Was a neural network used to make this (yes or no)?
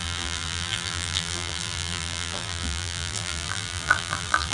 yes